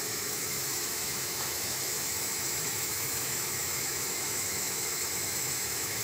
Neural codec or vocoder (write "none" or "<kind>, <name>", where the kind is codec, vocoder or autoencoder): autoencoder, DAC-VAE